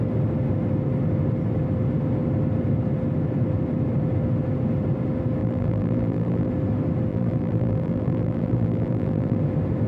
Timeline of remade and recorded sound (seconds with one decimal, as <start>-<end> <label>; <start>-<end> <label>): 0.0-5.4 recorded; 5.4-6.5 remade; 6.5-7.1 recorded; 7.1-9.4 remade; 9.4-9.9 recorded